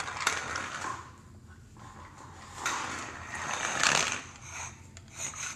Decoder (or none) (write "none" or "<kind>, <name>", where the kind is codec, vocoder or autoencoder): none